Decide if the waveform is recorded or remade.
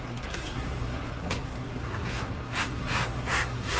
remade